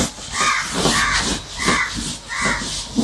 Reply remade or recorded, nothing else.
recorded